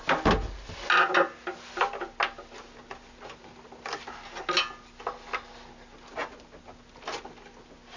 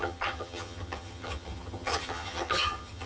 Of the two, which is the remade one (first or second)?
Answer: second